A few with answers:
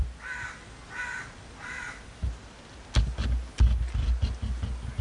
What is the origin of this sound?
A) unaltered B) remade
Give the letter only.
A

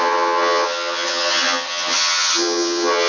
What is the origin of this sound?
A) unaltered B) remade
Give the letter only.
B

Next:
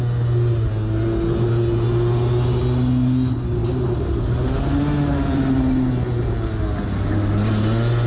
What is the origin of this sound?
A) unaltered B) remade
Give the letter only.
A